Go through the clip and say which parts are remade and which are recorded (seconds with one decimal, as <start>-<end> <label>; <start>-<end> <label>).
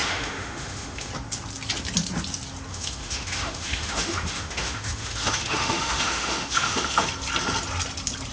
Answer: 0.0-1.1 remade; 1.1-2.7 recorded; 2.7-7.0 remade; 7.0-8.3 recorded